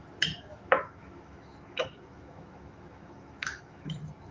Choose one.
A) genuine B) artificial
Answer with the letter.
B